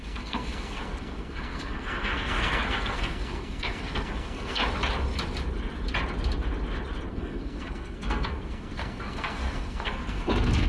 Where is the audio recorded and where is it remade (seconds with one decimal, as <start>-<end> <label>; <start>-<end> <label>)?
0.0-4.6 remade; 4.6-7.1 recorded; 7.1-10.7 remade